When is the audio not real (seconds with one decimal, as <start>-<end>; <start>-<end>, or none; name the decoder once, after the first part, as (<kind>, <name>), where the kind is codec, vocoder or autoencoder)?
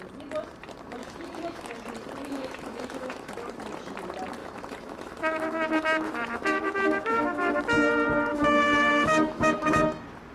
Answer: 1.0-1.7 (autoencoder, DAC-VAE); 2.2-3.3; 4.4-7.6; 8.3-9.8